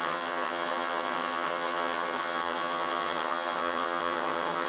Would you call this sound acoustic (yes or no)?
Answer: no